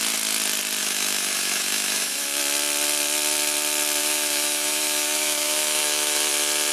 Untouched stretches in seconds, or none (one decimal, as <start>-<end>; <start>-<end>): 0.0-0.8; 2.4-4.0; 6.3-6.7